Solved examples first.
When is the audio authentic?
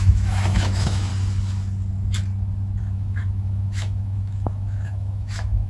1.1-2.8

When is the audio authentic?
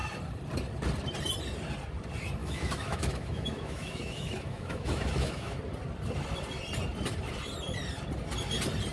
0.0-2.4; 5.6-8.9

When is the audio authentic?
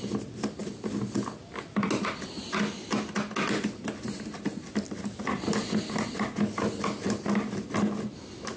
0.0-8.6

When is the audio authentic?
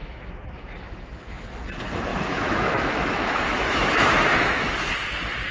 1.4-2.1; 4.9-5.5